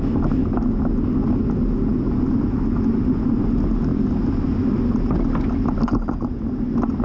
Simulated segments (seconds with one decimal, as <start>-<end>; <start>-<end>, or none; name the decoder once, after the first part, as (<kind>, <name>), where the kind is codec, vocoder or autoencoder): none